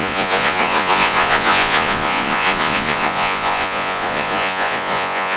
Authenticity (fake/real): fake